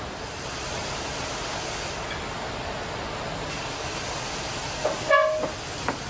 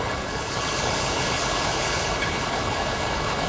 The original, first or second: first